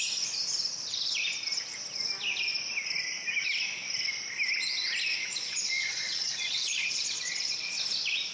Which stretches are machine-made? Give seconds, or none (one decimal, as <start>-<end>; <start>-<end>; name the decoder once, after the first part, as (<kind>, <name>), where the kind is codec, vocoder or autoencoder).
5.1-7.8 (vocoder, Vocos)